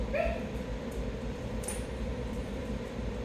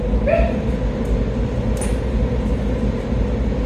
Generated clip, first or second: first